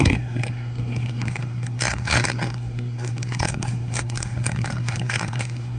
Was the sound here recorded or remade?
remade